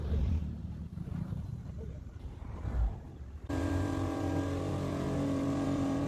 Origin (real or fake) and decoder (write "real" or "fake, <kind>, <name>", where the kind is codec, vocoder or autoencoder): fake, vocoder, BigVGAN v2